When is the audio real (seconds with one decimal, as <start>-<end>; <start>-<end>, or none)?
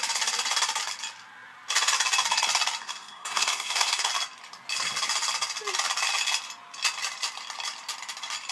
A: 0.0-2.8; 4.1-8.5